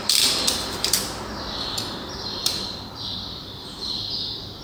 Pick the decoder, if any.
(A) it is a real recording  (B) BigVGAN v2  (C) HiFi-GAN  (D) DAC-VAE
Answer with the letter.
B